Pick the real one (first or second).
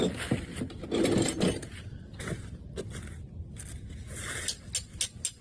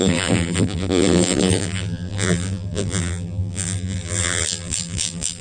first